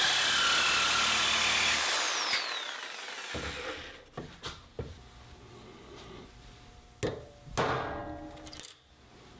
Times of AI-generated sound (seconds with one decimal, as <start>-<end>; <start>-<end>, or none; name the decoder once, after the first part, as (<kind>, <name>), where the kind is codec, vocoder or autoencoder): none